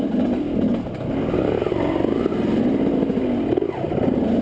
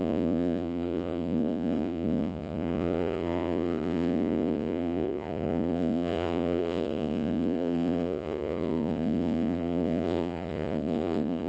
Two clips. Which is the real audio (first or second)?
first